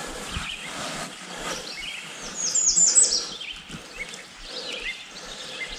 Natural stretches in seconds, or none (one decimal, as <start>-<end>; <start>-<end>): 0.0-5.8